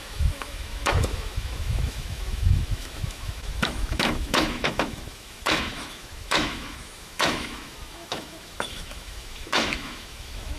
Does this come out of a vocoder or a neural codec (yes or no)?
yes